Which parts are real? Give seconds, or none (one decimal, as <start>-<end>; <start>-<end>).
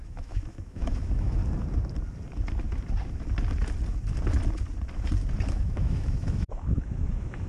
1.4-5.5